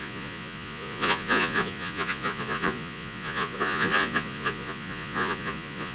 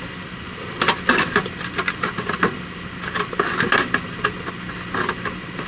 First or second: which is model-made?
first